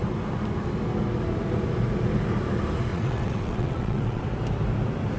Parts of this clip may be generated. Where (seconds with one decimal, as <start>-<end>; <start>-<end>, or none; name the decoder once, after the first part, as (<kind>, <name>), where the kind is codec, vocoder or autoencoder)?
2.9-4.2 (vocoder, WaveNeXt)